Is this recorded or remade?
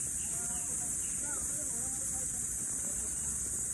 recorded